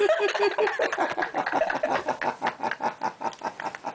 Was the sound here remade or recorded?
recorded